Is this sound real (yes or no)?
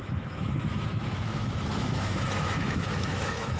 no